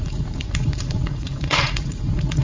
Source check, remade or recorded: remade